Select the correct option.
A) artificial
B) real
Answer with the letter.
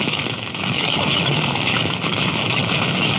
A